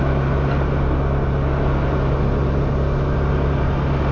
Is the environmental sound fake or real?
real